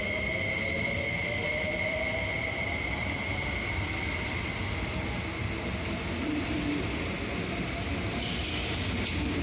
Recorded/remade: recorded